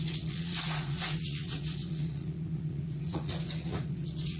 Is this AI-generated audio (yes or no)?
yes